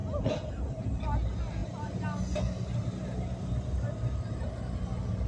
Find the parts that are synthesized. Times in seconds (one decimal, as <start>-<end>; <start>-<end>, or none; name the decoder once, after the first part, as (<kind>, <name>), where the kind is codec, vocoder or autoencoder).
none